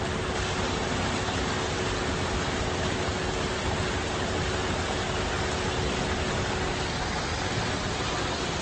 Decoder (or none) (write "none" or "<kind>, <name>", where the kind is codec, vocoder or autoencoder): none